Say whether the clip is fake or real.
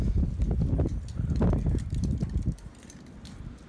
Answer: real